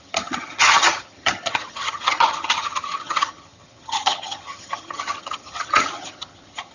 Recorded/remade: remade